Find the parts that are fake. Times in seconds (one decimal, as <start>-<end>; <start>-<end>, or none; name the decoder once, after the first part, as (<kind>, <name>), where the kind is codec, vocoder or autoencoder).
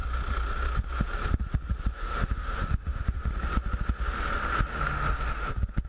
1.9-3.3 (autoencoder, DAC-VAE); 4.7-5.5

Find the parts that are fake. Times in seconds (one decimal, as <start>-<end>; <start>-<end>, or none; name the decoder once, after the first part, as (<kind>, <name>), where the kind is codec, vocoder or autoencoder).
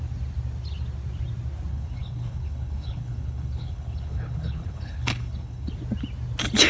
1.7-5.7 (codec, HILCodec)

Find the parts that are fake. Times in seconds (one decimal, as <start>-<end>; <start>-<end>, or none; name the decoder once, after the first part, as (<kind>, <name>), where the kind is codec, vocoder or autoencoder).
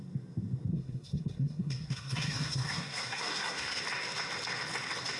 0.7-3.8 (codec, SNAC)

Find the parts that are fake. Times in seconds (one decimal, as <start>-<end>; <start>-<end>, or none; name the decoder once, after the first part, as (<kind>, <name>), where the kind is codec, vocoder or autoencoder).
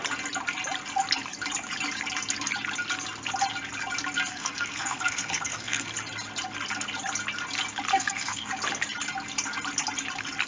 4.3-5.9 (codec, SNAC); 7.9-8.5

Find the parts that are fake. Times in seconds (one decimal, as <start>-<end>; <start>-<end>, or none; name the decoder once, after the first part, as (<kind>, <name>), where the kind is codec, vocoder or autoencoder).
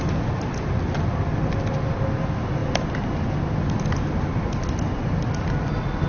none